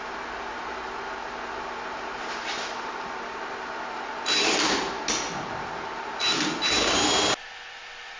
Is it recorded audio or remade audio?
recorded